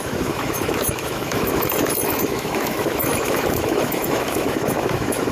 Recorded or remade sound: remade